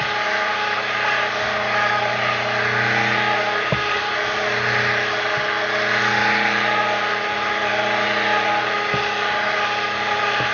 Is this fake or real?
real